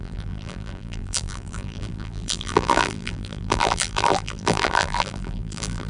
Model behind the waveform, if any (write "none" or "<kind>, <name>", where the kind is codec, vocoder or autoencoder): vocoder, BigVGAN v2